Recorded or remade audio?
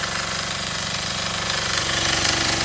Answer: remade